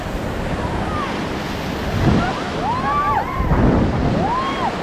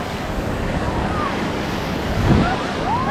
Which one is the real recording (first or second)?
first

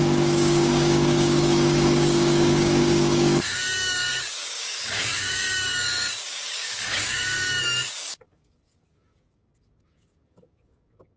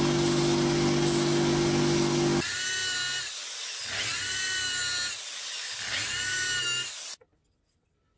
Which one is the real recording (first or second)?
second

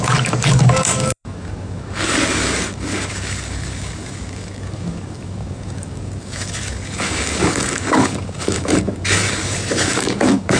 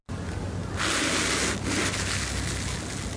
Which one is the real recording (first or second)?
second